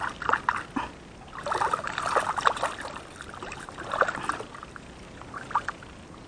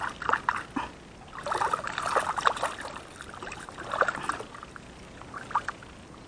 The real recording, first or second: second